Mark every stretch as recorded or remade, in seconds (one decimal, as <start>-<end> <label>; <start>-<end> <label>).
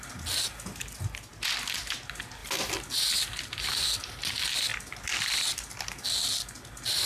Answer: 0.0-2.4 recorded; 2.4-3.2 remade; 3.2-4.7 recorded; 4.7-5.4 remade; 5.4-7.1 recorded